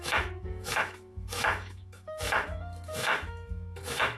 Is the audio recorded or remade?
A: remade